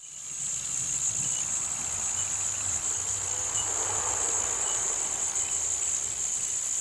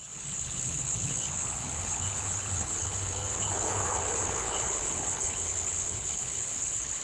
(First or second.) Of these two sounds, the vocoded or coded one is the second